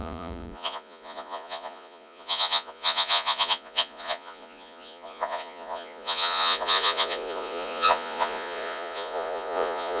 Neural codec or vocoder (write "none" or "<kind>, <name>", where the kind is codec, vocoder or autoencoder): vocoder, Vocos